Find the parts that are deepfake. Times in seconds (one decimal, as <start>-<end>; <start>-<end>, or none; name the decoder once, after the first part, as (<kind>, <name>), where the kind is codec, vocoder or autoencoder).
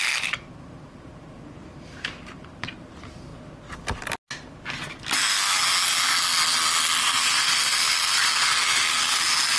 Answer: 0.0-3.3 (vocoder, BigVGAN v2); 7.0-9.6